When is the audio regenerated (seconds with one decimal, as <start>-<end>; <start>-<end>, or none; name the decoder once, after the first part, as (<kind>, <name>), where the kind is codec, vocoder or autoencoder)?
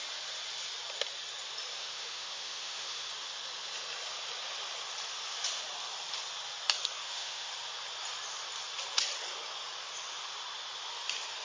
1.7-3.1 (autoencoder, DAC-VAE); 7.0-7.5